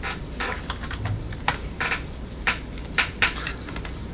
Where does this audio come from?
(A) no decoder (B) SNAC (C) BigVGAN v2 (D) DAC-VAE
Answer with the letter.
C